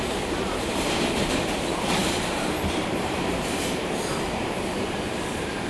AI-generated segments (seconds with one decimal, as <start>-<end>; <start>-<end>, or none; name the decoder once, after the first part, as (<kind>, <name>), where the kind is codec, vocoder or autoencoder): 0.0-5.7 (vocoder, BigVGAN v2)